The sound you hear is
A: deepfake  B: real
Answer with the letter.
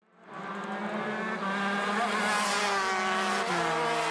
B